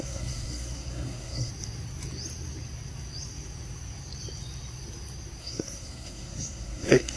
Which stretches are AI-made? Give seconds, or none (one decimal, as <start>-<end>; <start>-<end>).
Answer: 0.0-1.5; 5.4-7.2